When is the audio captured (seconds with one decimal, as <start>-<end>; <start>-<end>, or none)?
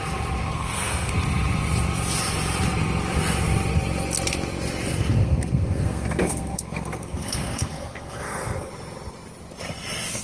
0.0-0.4; 1.1-5.2; 8.7-10.2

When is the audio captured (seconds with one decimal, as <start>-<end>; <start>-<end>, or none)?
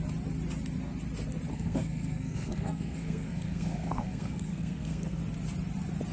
0.0-1.5; 5.2-6.1